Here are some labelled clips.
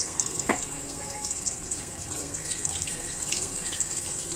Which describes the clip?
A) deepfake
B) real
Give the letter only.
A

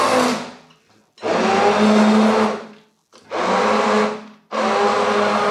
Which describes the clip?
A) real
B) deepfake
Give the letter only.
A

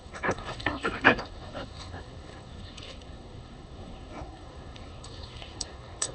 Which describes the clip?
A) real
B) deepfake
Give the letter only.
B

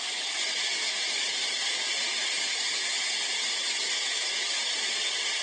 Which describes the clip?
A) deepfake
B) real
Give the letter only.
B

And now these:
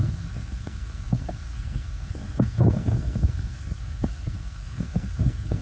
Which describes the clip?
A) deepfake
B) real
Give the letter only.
A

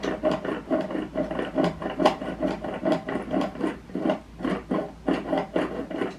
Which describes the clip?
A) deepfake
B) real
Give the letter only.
B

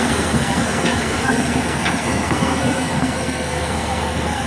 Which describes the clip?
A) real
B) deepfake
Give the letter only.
B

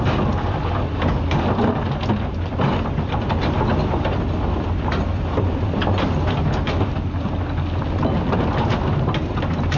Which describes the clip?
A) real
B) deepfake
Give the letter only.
A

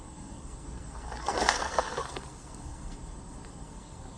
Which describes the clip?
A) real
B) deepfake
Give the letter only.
B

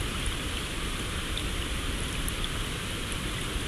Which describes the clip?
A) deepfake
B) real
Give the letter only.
B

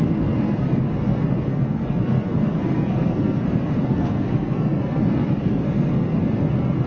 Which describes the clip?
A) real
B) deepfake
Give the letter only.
B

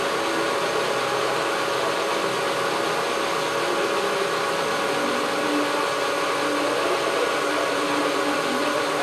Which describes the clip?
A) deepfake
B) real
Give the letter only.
B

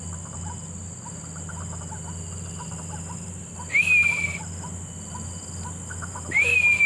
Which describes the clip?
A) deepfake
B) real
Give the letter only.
B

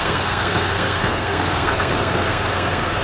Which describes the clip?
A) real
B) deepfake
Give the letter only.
B